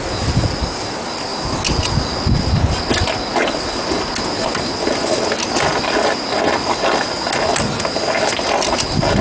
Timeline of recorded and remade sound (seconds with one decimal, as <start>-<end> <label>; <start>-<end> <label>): 0.0-9.2 recorded